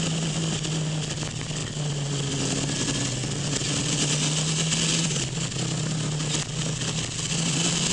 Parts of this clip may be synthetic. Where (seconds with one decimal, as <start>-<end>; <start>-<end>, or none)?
none